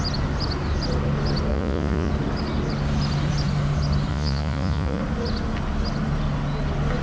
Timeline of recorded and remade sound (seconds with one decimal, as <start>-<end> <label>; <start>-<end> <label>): 0.0-1.5 recorded; 1.5-2.1 remade; 2.1-4.1 recorded; 4.1-5.0 remade; 5.0-7.0 recorded